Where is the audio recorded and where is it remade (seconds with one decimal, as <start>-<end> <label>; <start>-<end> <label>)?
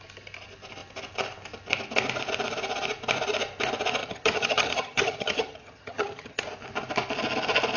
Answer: 0.0-4.0 recorded; 4.0-6.4 remade; 6.4-7.8 recorded